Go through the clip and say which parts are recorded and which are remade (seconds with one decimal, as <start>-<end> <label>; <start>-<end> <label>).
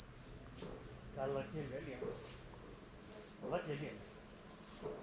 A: 0.0-5.0 recorded